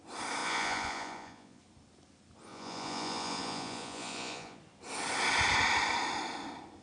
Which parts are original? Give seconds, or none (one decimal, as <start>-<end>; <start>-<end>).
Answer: 0.0-0.4; 1.6-2.5; 4.6-6.8